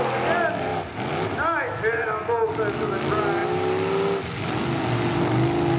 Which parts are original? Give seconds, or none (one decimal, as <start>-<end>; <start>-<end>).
0.0-5.8